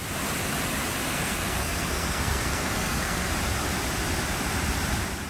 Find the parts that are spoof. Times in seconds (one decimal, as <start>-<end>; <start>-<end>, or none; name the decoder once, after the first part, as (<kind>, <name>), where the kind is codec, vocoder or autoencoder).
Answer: 1.1-3.3 (codec, SNAC)